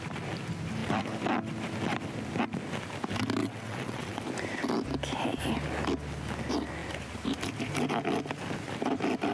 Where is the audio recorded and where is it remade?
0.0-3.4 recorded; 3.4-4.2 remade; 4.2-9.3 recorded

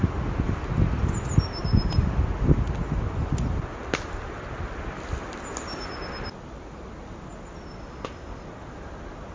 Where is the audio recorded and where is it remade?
0.0-9.3 recorded

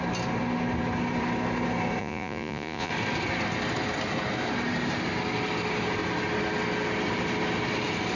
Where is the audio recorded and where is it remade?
0.0-2.0 recorded; 2.0-2.9 remade; 2.9-8.2 recorded

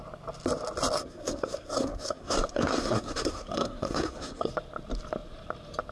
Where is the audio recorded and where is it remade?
0.0-1.0 recorded; 1.0-4.5 remade; 4.5-5.9 recorded